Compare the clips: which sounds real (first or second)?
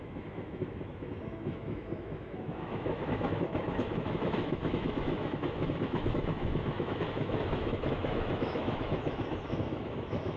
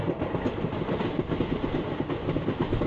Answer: second